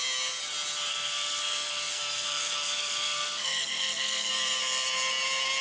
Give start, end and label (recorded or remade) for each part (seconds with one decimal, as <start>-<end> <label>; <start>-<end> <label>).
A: 0.0-0.9 recorded; 0.9-4.3 remade; 4.3-5.6 recorded